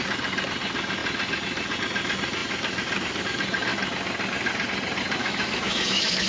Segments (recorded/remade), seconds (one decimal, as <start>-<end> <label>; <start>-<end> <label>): 0.0-5.2 recorded; 5.2-6.3 remade